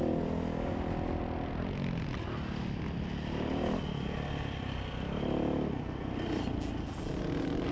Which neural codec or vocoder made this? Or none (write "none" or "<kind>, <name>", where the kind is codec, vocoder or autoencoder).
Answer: none